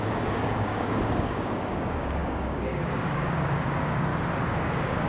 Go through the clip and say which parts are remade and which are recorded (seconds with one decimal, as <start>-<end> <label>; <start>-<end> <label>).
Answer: 0.0-4.1 remade; 4.1-4.6 recorded; 4.6-5.1 remade